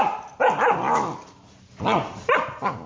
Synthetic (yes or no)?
yes